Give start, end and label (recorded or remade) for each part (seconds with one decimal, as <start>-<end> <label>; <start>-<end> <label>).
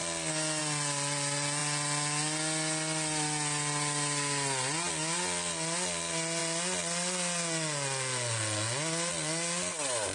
0.0-10.1 recorded